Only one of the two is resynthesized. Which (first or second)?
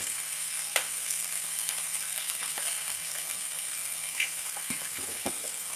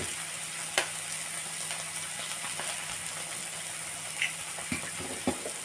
first